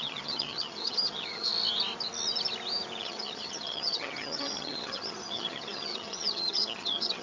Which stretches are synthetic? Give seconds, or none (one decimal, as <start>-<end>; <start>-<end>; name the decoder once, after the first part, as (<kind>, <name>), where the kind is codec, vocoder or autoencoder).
0.0-1.5 (vocoder, HiFi-GAN); 3.0-7.2

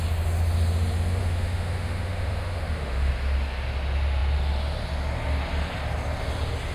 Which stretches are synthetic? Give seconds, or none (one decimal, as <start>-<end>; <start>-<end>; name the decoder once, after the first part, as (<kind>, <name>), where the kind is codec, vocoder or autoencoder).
1.2-3.1 (autoencoder, DAC-VAE)

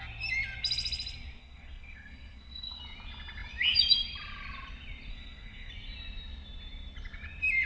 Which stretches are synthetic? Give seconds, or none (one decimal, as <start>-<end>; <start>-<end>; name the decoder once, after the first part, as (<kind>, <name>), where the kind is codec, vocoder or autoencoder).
1.4-2.8 (codec, SNAC); 5.1-5.7

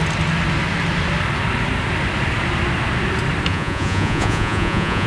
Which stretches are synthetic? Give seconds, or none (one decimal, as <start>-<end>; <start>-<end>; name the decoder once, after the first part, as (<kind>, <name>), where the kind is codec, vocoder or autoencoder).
3.5-5.1 (vocoder, Vocos)

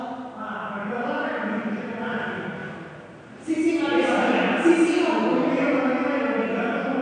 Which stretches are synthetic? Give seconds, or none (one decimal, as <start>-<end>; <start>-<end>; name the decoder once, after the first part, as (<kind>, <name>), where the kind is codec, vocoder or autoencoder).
none

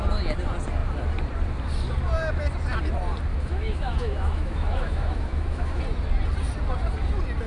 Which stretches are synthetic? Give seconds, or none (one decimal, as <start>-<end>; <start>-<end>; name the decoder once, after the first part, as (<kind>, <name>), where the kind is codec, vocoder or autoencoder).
3.3-5.8 (autoencoder, DAC-VAE)

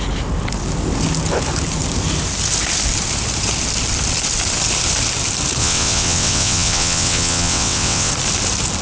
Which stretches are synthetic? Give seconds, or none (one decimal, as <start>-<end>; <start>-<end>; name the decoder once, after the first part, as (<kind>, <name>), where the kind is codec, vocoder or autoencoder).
5.6-8.1 (vocoder, WaveNeXt)